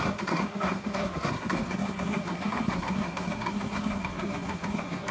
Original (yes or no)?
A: no